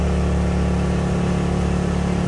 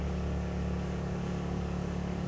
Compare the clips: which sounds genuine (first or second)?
first